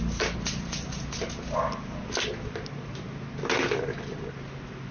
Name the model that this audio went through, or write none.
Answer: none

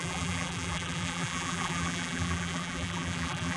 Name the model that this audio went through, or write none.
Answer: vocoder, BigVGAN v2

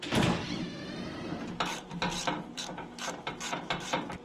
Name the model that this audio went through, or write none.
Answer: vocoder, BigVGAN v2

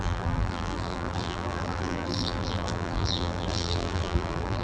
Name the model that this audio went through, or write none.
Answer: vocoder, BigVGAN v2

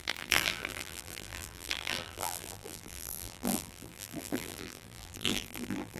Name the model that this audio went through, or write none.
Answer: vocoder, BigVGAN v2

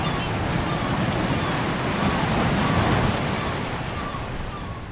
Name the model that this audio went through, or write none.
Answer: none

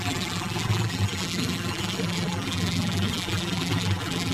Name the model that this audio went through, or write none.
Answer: vocoder, BigVGAN v2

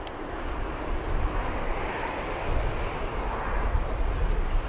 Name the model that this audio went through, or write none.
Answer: none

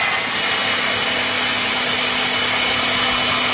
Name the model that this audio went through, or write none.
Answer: none